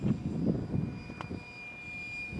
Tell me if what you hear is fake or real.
real